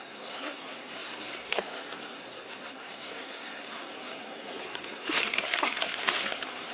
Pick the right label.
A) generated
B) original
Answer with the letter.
A